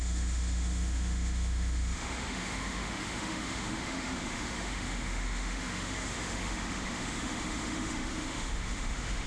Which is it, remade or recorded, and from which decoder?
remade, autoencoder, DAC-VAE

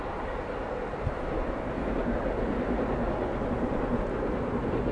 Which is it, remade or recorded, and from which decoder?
recorded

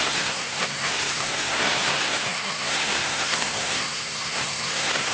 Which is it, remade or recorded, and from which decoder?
remade, codec, SNAC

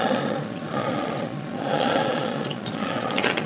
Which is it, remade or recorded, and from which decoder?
remade, vocoder, Vocos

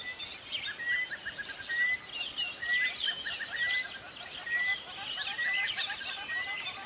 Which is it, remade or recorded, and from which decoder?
recorded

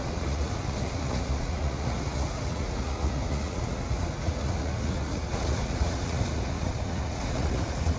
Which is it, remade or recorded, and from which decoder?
remade, vocoder, Vocos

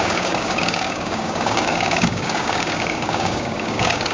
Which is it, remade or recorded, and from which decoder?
remade, codec, DAC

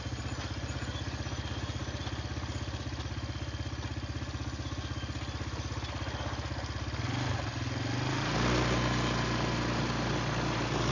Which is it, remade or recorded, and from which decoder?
recorded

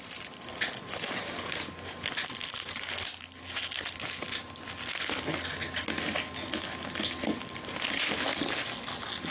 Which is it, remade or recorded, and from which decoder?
recorded